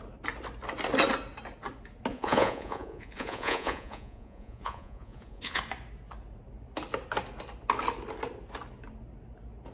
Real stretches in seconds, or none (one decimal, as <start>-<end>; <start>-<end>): 0.0-2.1; 5.6-9.7